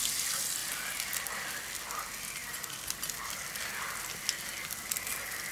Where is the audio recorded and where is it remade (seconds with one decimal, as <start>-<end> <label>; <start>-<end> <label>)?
0.0-5.5 recorded